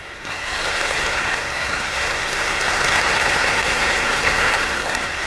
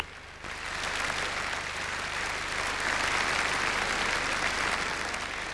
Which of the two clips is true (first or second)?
second